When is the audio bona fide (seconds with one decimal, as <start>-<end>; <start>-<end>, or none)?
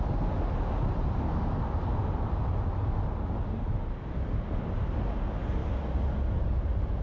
0.0-7.0